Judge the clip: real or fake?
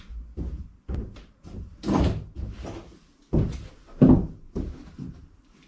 real